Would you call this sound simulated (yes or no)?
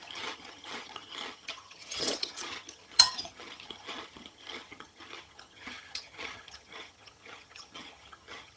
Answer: yes